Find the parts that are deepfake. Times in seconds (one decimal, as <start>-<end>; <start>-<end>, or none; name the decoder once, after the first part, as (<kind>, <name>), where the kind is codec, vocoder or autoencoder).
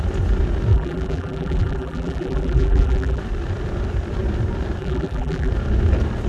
0.7-3.2 (vocoder, BigVGAN v2); 4.8-5.5